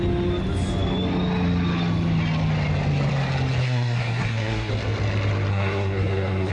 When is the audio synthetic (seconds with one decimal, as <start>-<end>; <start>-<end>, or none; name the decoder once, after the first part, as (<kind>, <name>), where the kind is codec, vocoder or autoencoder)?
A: 3.6-4.7 (codec, SNAC); 5.5-6.5